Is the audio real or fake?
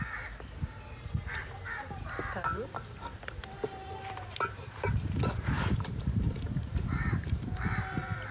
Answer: fake